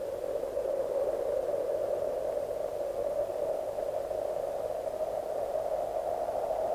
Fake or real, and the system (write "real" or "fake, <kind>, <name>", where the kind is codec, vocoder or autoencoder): real